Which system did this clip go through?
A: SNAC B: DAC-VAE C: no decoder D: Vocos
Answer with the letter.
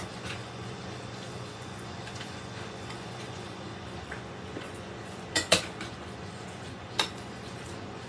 D